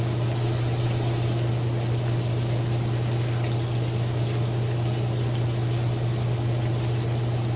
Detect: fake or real real